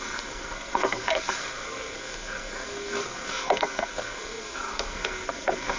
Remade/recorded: remade